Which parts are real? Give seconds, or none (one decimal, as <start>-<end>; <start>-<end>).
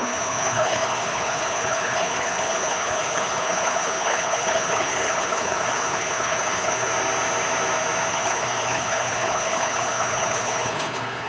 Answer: 6.9-8.1